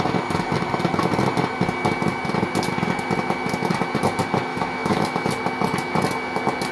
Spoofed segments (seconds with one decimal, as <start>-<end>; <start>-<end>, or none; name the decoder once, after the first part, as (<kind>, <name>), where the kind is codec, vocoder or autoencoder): 4.5-5.3 (autoencoder, DAC-VAE)